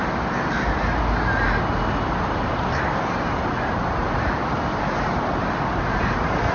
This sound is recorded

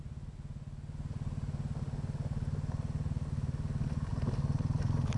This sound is recorded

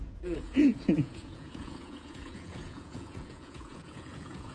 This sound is remade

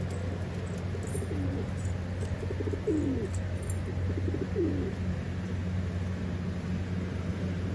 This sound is recorded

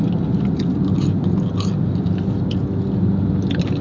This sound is recorded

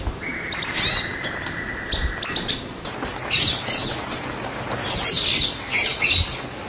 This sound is recorded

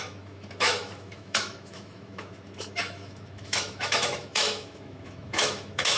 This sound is remade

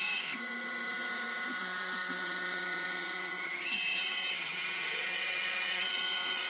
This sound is remade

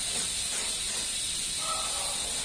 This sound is recorded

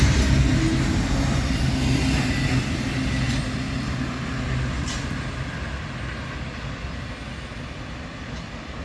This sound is recorded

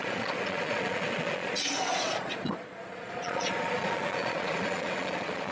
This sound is remade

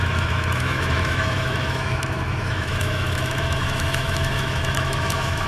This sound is remade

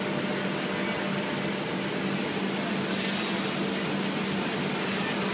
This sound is recorded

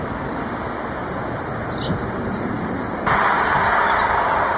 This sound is remade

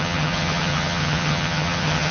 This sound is remade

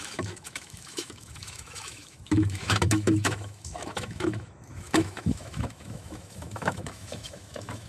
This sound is remade